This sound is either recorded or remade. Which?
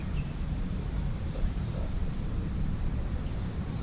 remade